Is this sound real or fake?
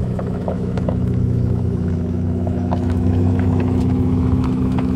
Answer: fake